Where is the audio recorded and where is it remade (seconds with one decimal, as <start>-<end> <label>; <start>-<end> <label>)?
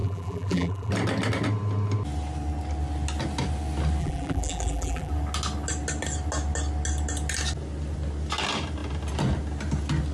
0.0-0.9 remade; 0.9-4.0 recorded; 4.0-5.1 remade; 5.1-10.1 recorded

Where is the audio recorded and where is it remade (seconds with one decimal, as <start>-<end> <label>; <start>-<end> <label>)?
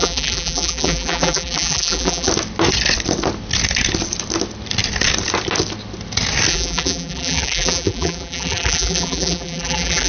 0.0-2.3 remade; 2.3-6.5 recorded; 6.5-10.1 remade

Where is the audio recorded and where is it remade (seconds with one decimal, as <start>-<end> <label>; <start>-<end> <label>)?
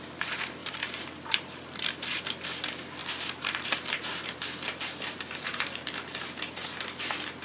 0.0-0.6 recorded; 0.6-2.2 remade; 2.2-3.0 recorded; 3.0-6.2 remade; 6.2-7.4 recorded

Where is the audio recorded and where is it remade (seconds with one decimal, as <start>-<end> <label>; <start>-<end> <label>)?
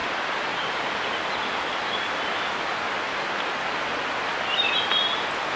0.0-0.9 remade; 0.9-5.6 recorded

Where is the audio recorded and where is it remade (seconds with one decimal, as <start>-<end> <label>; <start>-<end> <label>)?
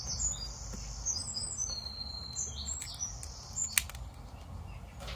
0.0-5.2 recorded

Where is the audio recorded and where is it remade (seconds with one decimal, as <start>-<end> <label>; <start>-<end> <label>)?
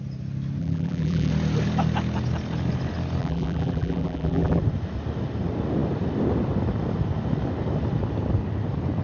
0.0-0.6 recorded; 0.6-1.3 remade; 1.3-3.2 recorded; 3.2-4.6 remade; 4.6-9.0 recorded